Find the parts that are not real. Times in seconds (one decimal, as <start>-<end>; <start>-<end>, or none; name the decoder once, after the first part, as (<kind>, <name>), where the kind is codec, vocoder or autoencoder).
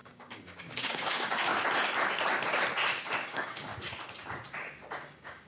0.0-1.5 (codec, DAC); 3.1-3.7; 5.0-5.5